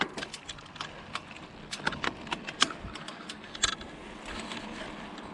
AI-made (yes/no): no